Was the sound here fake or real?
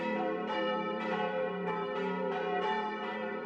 fake